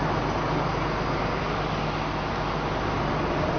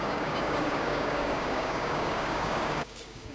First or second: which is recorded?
first